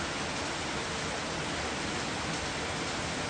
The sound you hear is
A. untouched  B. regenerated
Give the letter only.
A